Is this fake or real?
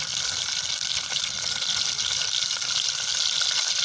real